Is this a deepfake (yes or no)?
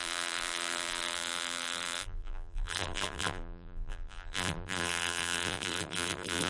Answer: yes